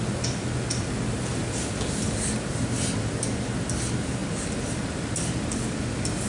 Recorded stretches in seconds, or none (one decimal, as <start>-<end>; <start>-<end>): 0.0-6.3